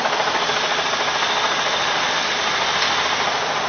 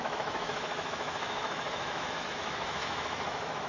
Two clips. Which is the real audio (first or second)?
first